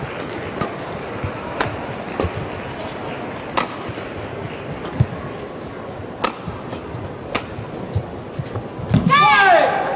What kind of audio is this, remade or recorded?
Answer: recorded